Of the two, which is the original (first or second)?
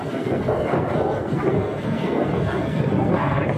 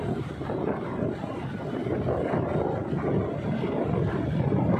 second